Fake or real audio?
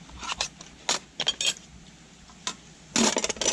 real